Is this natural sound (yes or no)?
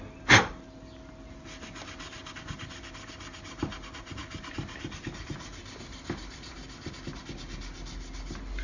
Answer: yes